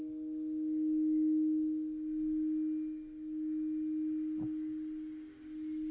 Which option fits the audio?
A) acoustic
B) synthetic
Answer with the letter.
A